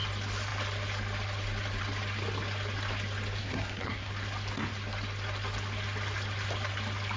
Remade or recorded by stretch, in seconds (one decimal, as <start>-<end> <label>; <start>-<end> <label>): 0.0-3.4 recorded; 3.4-4.1 remade; 4.1-7.2 recorded